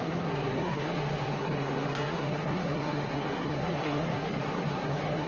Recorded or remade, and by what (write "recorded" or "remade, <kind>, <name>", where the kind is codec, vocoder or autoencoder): remade, codec, SNAC